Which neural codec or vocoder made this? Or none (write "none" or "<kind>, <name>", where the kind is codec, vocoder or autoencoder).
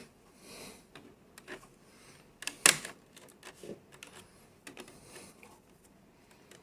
none